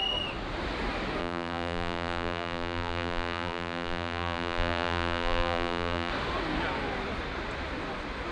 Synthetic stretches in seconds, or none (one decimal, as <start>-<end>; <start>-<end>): 1.2-6.1